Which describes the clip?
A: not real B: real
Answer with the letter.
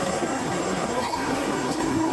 A